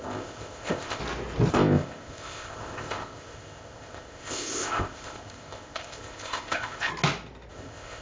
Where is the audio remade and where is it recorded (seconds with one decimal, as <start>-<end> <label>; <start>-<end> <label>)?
0.0-1.0 remade; 1.0-1.5 recorded; 1.5-6.9 remade; 6.9-7.5 recorded; 7.5-8.0 remade